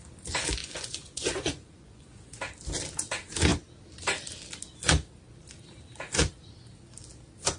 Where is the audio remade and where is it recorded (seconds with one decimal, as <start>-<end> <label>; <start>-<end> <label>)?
0.0-0.6 recorded; 0.6-2.4 remade; 2.4-7.6 recorded